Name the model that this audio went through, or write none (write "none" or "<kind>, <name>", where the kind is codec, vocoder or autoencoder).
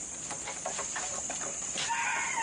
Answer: none